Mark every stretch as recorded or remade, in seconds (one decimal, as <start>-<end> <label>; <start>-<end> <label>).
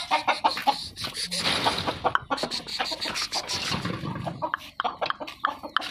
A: 0.0-2.7 recorded; 2.7-5.0 remade; 5.0-5.9 recorded